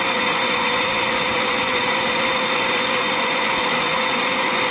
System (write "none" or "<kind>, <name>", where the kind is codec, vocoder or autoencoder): vocoder, Vocos